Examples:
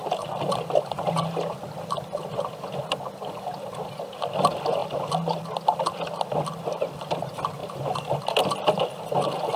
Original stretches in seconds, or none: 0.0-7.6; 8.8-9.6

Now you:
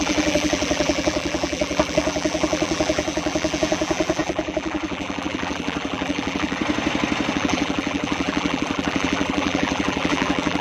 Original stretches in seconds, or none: 6.6-7.3